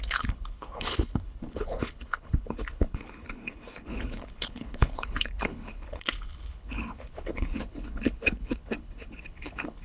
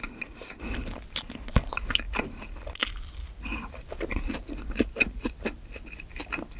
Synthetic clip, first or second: first